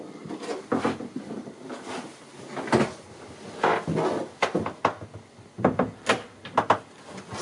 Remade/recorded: recorded